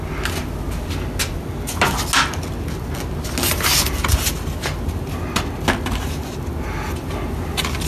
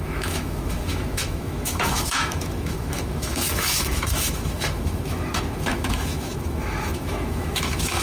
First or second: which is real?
first